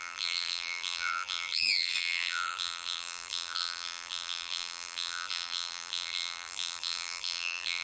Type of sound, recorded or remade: remade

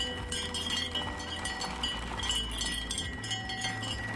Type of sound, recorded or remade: recorded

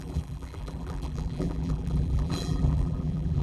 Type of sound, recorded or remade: remade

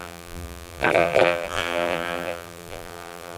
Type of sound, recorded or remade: remade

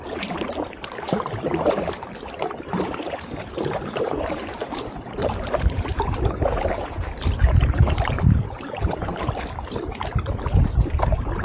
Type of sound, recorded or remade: remade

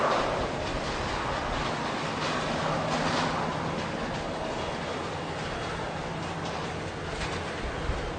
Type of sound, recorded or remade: recorded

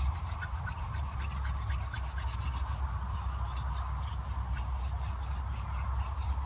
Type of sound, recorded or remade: recorded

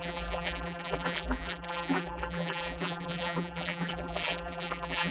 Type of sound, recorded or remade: remade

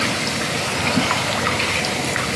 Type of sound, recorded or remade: recorded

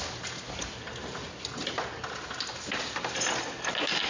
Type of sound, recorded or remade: recorded